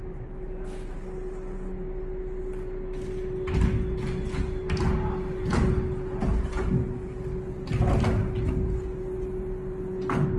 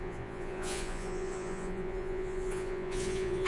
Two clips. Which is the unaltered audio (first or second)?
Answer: first